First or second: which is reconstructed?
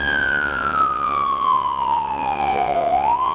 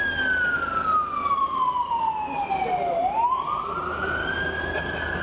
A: first